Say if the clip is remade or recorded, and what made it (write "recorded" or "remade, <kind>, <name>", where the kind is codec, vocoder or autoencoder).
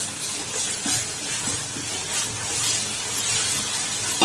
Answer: recorded